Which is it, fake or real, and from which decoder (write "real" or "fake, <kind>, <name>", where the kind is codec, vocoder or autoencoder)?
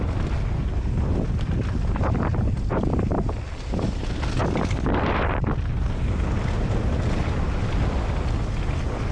real